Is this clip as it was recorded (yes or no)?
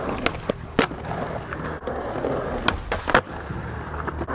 yes